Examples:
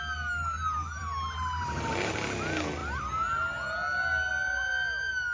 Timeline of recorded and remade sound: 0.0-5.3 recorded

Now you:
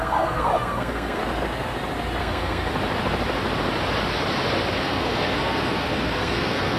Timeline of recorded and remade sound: 0.0-1.2 remade; 1.2-2.2 recorded; 2.2-2.7 remade; 2.7-4.8 recorded; 4.8-6.8 remade

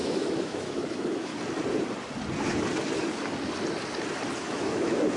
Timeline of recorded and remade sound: 0.0-1.3 remade; 1.3-4.4 recorded; 4.4-5.2 remade

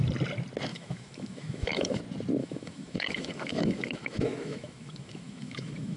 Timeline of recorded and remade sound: 0.0-0.7 recorded; 0.7-2.0 remade; 2.0-2.4 recorded; 2.4-6.0 remade